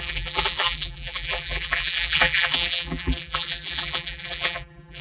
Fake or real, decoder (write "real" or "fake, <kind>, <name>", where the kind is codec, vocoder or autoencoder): fake, vocoder, BigVGAN v2